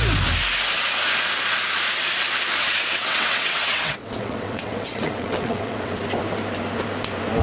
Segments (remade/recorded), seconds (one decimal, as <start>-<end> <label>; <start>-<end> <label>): 0.0-2.6 recorded; 2.6-5.9 remade; 5.9-7.4 recorded